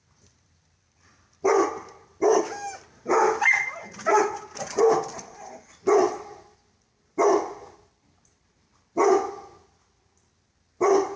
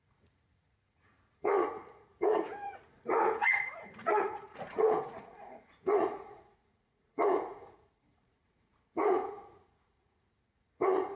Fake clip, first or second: second